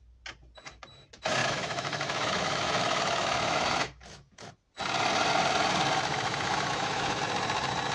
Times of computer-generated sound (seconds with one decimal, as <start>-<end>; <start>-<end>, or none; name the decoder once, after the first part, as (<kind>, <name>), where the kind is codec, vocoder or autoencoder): 1.4-4.5 (autoencoder, DAC-VAE); 6.1-7.2